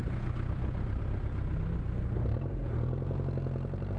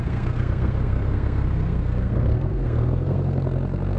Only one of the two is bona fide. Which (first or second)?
first